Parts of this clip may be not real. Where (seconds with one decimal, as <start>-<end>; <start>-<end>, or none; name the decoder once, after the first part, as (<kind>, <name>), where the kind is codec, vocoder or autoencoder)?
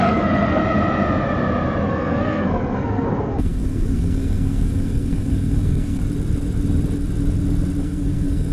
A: 0.0-0.6 (codec, SNAC); 1.9-6.0; 7.8-8.5